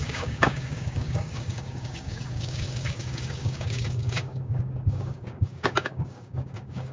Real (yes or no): no